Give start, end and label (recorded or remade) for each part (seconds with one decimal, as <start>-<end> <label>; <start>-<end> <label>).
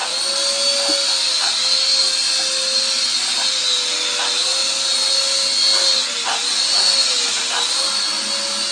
0.0-8.7 recorded